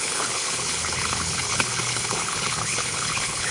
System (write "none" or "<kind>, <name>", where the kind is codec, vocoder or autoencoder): codec, HILCodec